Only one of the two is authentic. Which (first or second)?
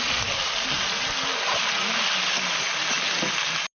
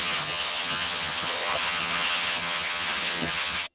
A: first